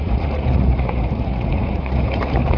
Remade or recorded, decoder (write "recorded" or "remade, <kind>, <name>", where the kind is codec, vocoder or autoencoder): remade, vocoder, Vocos